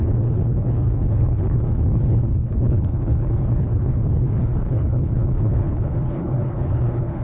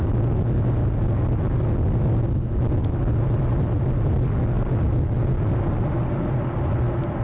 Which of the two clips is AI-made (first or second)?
first